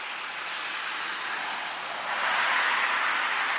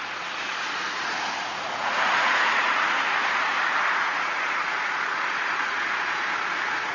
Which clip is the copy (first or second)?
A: second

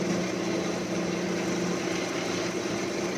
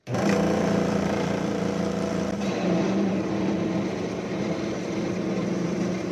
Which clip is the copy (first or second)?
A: second